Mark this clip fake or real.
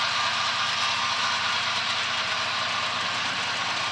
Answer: real